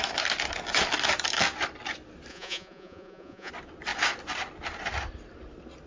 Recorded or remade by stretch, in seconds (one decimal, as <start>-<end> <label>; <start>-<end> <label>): 0.0-2.3 recorded; 2.3-3.5 remade; 3.5-5.9 recorded